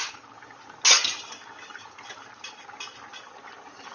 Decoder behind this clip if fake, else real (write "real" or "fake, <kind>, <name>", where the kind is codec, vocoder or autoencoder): real